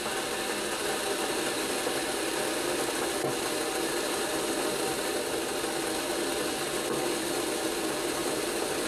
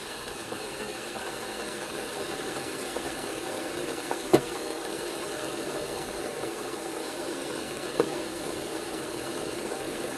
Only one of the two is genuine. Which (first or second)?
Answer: first